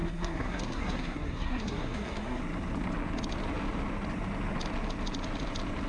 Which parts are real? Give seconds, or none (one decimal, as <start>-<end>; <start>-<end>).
2.4-5.9